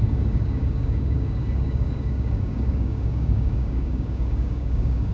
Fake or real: fake